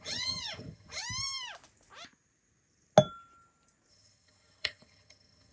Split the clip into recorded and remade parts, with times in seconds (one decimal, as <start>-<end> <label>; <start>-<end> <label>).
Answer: 0.0-1.0 remade; 1.0-3.9 recorded; 3.9-5.5 remade